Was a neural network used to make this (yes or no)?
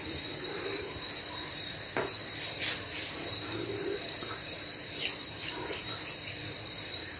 yes